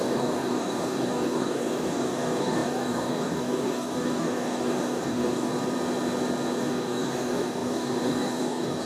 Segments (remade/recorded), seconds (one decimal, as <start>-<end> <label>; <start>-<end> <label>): 0.0-5.5 remade; 5.5-6.6 recorded; 6.6-8.9 remade